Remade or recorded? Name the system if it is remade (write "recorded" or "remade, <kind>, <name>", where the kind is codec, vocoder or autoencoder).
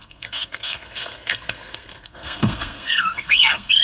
remade, codec, SNAC